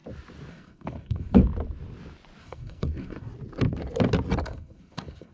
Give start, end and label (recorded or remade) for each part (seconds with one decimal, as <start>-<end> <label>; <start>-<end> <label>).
0.0-0.5 recorded; 0.5-1.4 remade; 1.4-2.4 recorded; 2.4-3.3 remade; 3.3-4.4 recorded; 4.4-5.3 remade